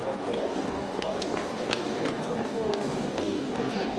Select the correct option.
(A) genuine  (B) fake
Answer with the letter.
B